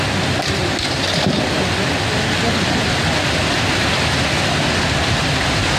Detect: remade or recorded recorded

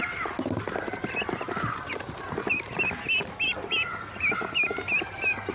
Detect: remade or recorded recorded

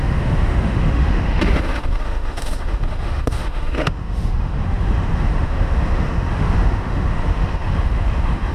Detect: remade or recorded remade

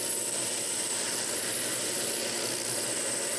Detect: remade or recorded recorded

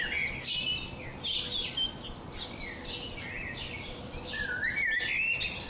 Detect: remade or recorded recorded